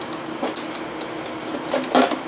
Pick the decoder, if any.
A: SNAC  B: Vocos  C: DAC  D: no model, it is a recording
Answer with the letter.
D